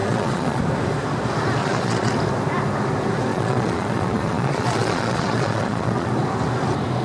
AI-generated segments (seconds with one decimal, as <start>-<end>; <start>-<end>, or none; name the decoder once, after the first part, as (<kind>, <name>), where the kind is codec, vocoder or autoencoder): 0.0-0.6 (vocoder, Vocos); 1.6-2.1; 3.3-6.1